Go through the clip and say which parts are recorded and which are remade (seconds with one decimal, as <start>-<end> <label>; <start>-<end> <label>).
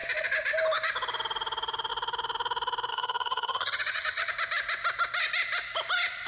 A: 0.0-2.9 recorded; 2.9-4.3 remade; 4.3-6.3 recorded